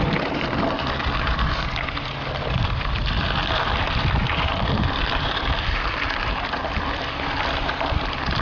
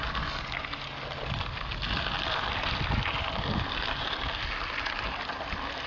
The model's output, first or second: first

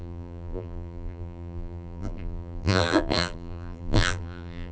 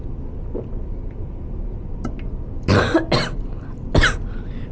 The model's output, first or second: first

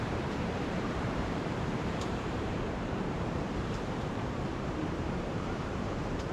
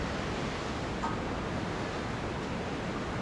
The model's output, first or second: first